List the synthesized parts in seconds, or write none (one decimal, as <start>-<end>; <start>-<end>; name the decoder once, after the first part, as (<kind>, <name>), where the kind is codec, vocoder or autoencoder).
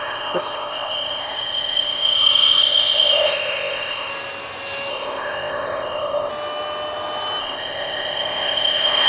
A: 0.0-4.1 (codec, ZipCodec); 4.9-6.3; 7.4-9.1